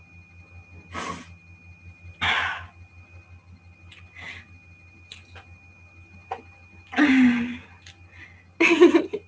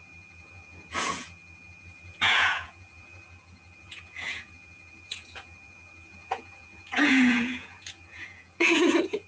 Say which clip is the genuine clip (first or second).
first